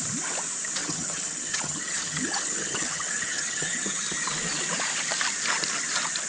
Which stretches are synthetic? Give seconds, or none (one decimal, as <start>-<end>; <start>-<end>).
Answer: 0.8-4.0